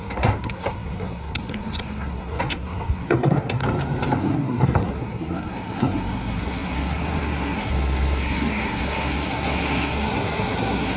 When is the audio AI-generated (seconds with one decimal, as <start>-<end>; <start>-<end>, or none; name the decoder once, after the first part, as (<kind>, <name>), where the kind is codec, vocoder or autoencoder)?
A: 0.0-3.6 (codec, SNAC); 4.2-11.0